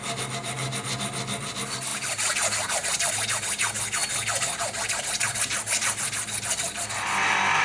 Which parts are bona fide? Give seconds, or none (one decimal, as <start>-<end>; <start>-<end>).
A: 0.0-7.6